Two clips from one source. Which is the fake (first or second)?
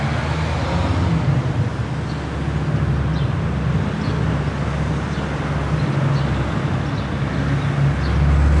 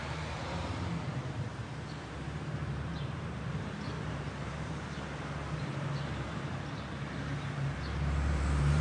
second